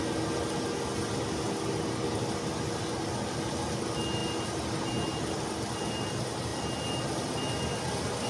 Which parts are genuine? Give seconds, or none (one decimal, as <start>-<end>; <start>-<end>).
0.0-8.3